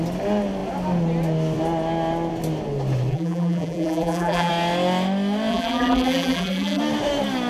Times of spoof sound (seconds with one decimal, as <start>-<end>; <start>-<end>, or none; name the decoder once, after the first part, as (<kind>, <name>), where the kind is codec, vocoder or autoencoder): 3.1-4.5 (vocoder, BigVGAN v2); 5.5-6.8